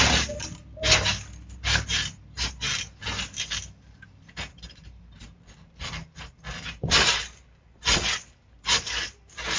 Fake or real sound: real